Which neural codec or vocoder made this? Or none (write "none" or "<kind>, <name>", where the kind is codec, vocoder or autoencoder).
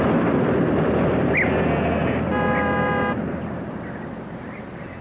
none